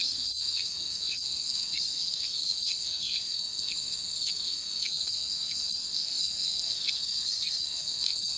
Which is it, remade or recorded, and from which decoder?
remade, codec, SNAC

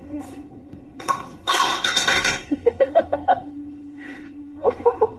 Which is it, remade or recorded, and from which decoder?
remade, codec, SNAC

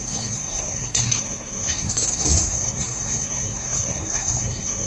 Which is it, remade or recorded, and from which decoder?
remade, codec, SNAC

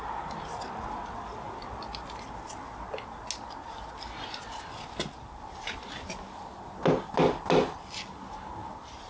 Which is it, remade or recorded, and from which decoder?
recorded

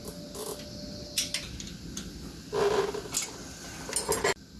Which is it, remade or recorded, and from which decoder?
recorded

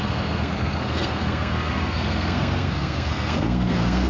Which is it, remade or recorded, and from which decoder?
remade, codec, SNAC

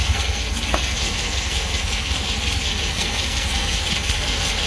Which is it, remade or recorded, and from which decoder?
remade, codec, SNAC